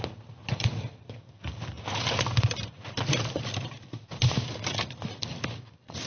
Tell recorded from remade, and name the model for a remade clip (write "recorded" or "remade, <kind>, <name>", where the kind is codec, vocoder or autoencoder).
recorded